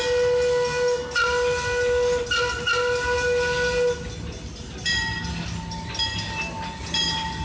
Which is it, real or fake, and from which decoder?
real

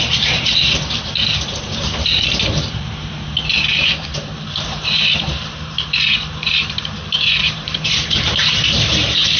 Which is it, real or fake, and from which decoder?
fake, vocoder, BigVGAN v2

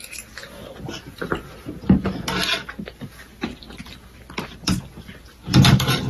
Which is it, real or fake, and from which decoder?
real